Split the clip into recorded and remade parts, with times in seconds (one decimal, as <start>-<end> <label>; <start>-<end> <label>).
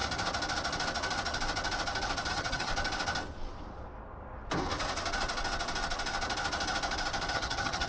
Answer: 0.0-2.3 recorded; 2.3-2.7 remade; 2.7-7.3 recorded; 7.3-7.9 remade